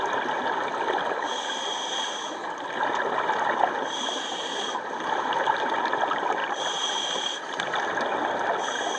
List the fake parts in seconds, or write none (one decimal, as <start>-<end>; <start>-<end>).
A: none